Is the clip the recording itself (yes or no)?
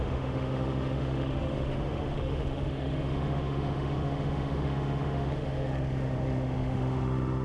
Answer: no